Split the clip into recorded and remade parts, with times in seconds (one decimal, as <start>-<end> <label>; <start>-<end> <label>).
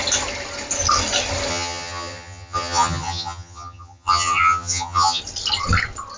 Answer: 0.0-1.5 recorded; 1.5-5.2 remade; 5.2-6.2 recorded